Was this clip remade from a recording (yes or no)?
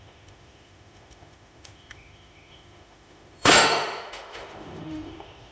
yes